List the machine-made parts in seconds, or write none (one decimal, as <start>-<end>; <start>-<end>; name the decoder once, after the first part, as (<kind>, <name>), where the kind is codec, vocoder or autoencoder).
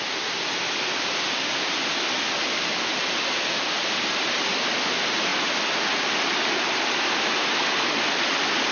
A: none